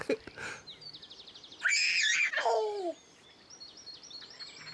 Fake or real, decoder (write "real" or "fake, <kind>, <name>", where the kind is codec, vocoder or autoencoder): real